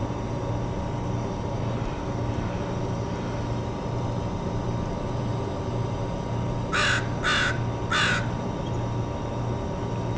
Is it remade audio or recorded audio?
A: recorded